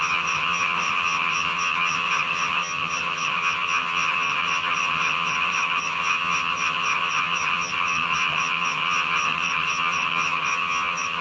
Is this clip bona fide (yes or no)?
no